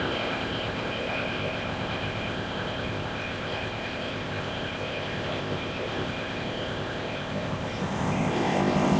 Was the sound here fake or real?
fake